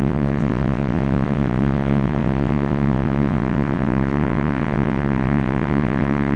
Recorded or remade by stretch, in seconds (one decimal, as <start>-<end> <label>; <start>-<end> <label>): 0.0-6.4 remade